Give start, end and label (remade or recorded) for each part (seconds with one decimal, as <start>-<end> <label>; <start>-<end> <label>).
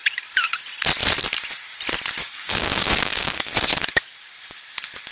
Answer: 0.0-2.2 recorded; 2.2-3.5 remade; 3.5-5.1 recorded